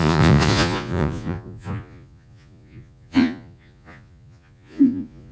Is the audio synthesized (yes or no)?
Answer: yes